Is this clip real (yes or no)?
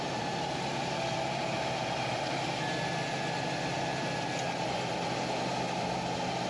yes